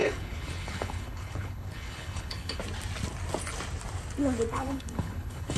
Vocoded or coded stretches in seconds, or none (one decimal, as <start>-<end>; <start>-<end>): 0.0-2.6; 4.5-5.6